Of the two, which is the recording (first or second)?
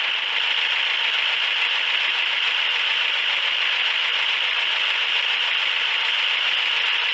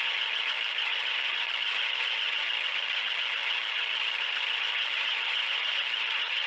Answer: first